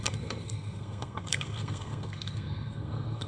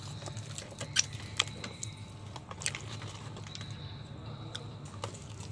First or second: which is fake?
first